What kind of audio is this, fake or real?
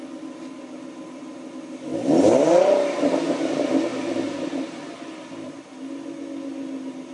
real